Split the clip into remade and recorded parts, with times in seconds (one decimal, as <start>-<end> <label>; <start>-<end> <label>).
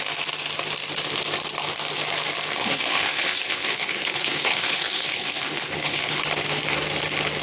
0.0-2.5 recorded; 2.5-6.2 remade; 6.2-7.4 recorded